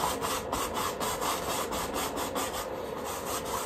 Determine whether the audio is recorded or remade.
recorded